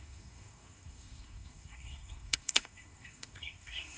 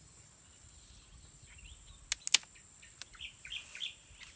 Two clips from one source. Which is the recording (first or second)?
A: second